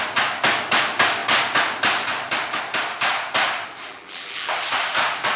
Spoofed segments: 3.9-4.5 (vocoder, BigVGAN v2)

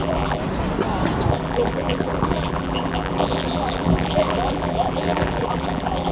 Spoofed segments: 0.0-0.4 (vocoder, BigVGAN v2); 1.3-6.1

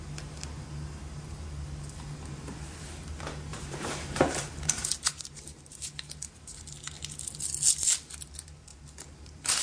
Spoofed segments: 3.5-6.3 (vocoder, BigVGAN v2); 8.7-9.6

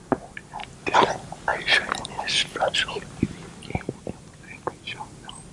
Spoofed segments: 0.6-1.1 (vocoder, BigVGAN v2); 1.5-4.8

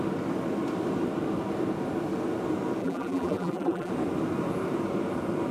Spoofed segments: 2.8-3.9 (vocoder, BigVGAN v2)